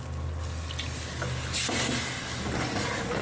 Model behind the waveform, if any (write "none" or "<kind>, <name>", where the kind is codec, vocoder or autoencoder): none